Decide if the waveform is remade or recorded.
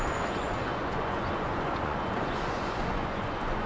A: remade